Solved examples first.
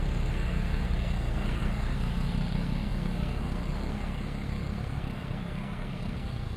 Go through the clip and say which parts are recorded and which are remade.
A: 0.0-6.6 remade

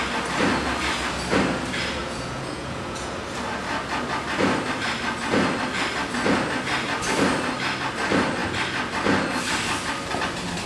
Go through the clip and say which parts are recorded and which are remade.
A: 0.0-2.0 recorded; 2.0-3.1 remade; 3.1-10.7 recorded

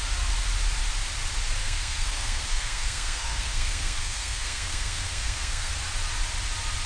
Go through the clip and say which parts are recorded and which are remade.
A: 0.0-1.6 recorded; 1.6-5.7 remade; 5.7-6.9 recorded